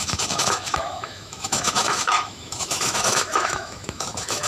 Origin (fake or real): fake